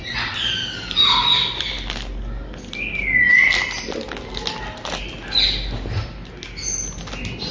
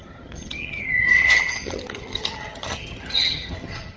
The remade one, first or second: second